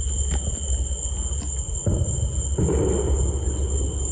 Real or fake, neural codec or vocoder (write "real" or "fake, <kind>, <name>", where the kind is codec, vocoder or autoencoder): real